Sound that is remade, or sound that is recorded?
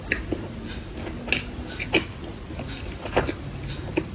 recorded